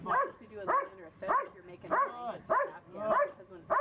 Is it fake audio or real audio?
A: real